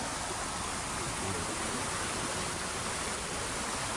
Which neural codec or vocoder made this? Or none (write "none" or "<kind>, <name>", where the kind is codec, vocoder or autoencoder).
none